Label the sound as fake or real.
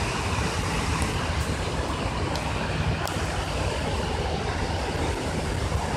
real